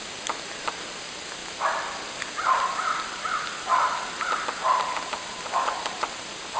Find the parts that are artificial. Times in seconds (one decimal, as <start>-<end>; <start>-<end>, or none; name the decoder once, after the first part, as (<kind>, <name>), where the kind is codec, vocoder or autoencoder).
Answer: none